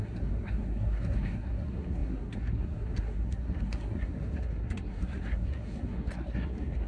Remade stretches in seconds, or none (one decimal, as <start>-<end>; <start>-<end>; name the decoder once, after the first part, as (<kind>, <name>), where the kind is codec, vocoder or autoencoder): 0.0-6.9 (codec, SNAC)